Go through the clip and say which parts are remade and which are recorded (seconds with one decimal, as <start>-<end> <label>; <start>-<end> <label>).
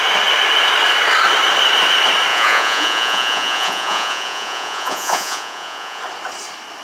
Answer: 0.0-2.3 recorded; 2.3-6.0 remade; 6.0-6.8 recorded